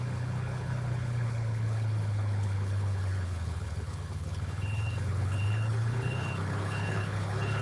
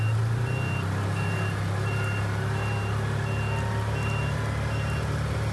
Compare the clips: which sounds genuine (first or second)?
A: second